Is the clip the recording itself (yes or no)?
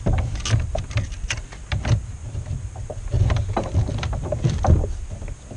yes